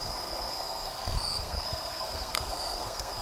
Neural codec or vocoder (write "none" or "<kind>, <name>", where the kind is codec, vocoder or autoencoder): codec, SNAC